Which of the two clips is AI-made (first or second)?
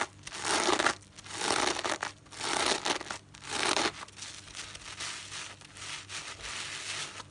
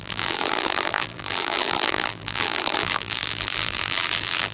second